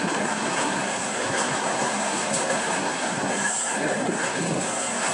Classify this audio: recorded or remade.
remade